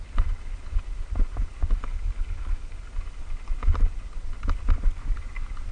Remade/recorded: recorded